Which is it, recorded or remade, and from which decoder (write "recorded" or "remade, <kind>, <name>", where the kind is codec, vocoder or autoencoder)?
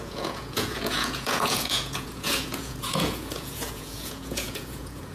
remade, vocoder, Vocos